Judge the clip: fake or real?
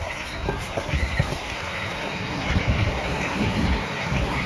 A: fake